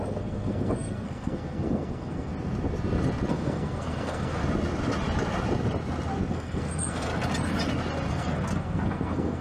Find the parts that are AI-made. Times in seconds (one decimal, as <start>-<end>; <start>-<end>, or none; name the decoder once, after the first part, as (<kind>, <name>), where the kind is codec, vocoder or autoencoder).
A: 0.0-2.3 (codec, SNAC); 3.3-4.4; 6.3-7.1; 8.1-9.4

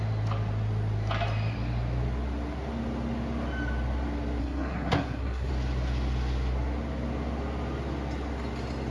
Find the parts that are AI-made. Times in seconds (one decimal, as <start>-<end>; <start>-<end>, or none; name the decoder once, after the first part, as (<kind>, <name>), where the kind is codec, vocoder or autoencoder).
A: 4.4-5.5 (codec, SNAC)

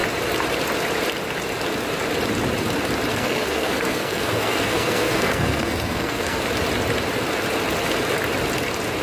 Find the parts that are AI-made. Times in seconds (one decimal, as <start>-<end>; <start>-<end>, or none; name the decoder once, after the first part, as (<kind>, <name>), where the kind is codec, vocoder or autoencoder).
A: 3.1-6.4 (codec, SNAC)